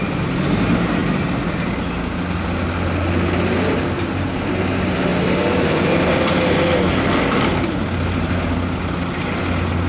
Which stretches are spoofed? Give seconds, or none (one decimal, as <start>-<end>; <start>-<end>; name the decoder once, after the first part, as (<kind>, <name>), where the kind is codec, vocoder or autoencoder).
none